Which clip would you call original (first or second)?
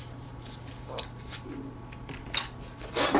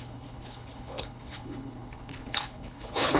first